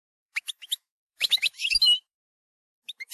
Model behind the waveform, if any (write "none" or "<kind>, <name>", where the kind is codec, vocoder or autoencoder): autoencoder, DAC-VAE